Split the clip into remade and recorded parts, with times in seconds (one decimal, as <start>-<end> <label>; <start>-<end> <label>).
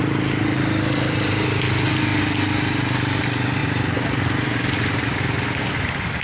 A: 0.0-6.2 recorded